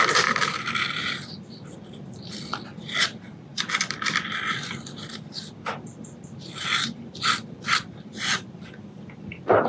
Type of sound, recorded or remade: remade